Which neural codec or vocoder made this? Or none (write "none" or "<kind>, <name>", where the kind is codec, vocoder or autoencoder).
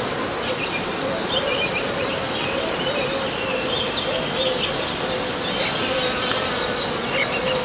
none